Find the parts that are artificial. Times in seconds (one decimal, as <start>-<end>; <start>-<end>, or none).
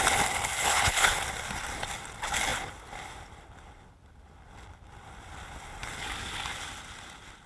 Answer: 0.6-1.2